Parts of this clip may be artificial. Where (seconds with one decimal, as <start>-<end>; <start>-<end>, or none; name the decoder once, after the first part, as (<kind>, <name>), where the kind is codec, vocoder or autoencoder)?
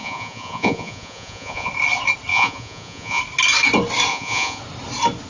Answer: 0.0-1.7 (vocoder, Vocos); 2.3-3.2; 4.1-4.6